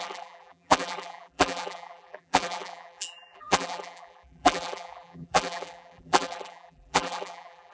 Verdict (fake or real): fake